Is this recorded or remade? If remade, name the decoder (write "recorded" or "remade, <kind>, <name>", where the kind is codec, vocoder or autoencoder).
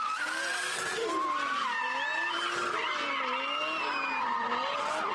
recorded